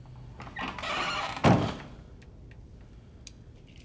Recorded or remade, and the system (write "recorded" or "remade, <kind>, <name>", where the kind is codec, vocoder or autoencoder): recorded